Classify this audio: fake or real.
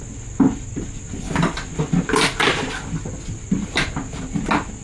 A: real